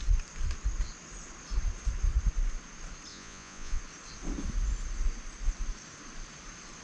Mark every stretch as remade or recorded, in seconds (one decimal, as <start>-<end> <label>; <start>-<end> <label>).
0.0-3.1 recorded; 3.1-3.8 remade; 3.8-6.8 recorded